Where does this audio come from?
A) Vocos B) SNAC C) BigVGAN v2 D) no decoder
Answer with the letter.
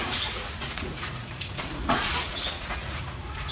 A